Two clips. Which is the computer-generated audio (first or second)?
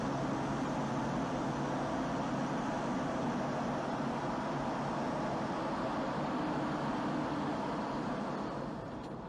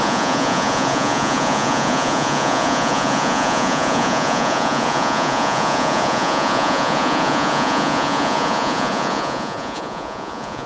second